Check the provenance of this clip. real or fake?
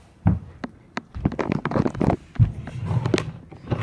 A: real